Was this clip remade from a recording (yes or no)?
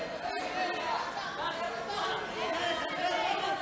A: no